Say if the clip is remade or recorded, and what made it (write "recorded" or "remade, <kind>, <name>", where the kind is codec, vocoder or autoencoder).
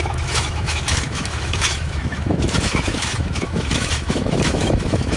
remade, autoencoder, DAC-VAE